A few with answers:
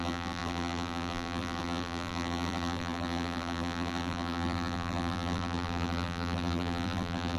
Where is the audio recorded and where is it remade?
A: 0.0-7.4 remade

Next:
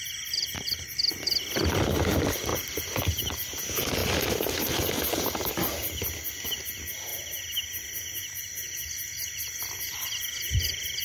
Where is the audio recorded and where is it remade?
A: 0.0-2.5 recorded; 2.5-3.6 remade; 3.6-4.0 recorded; 4.0-5.5 remade; 5.5-11.0 recorded

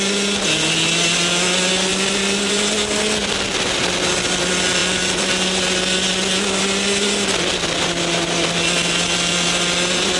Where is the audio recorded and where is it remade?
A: 0.0-1.9 recorded; 1.9-2.5 remade; 2.5-3.2 recorded; 3.2-3.8 remade; 3.8-4.8 recorded; 4.8-5.3 remade; 5.3-10.2 recorded